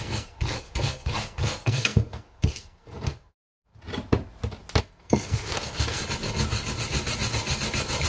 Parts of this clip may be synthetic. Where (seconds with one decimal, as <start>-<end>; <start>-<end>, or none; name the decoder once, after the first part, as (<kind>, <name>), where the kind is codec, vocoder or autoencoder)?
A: 0.0-3.7 (codec, SNAC); 4.8-6.0